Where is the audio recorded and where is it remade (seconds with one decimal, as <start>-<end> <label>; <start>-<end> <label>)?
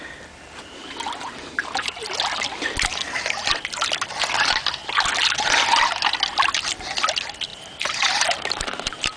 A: 0.0-7.5 recorded; 7.5-9.2 remade